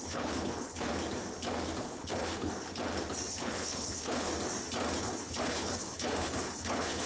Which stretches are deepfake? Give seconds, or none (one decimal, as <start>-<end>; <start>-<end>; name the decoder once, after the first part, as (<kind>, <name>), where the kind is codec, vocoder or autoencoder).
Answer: 0.0-0.9 (codec, HILCodec); 1.8-2.5; 3.3-4.3; 5.0-7.1

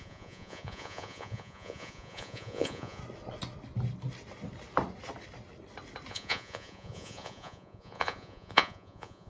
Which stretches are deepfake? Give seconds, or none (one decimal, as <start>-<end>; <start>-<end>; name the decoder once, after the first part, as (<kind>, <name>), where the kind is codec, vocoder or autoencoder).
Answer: 0.0-3.0 (vocoder, Vocos); 6.1-9.3

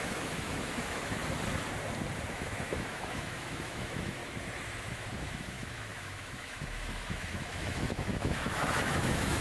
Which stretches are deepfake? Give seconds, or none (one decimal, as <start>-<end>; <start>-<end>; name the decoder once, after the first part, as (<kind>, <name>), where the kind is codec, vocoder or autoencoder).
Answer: 0.0-1.2 (autoencoder, DAC-VAE); 2.3-4.2; 4.8-9.4

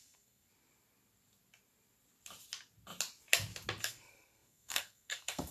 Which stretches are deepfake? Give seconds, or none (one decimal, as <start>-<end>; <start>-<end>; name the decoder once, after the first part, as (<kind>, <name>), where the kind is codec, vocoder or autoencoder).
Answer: 0.0-0.5 (codec, SNAC); 3.8-5.5